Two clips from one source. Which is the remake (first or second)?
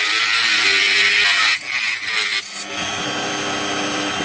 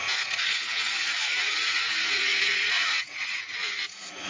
second